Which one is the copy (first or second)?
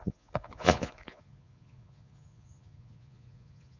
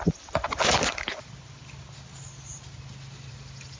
first